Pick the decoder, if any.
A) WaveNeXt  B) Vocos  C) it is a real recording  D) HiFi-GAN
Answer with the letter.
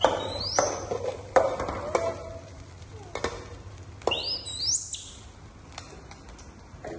C